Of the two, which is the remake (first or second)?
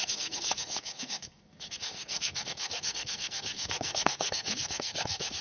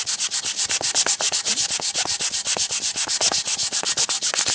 first